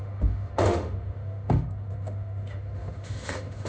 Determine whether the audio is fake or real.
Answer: fake